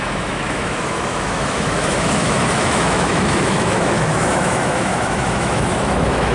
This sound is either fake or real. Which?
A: fake